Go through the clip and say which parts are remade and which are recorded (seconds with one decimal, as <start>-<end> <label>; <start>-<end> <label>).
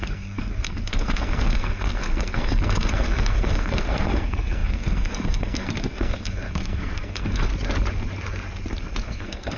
0.0-7.5 remade; 7.5-9.0 recorded; 9.0-9.6 remade